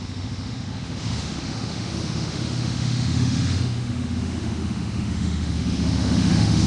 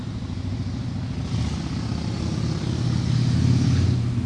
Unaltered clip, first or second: second